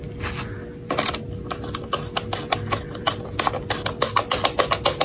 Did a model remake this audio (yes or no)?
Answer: no